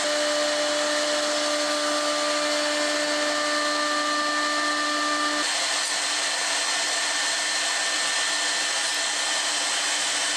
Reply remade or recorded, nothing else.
recorded